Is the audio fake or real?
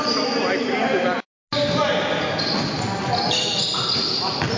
real